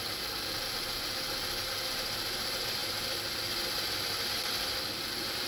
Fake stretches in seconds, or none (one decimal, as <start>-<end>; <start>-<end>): none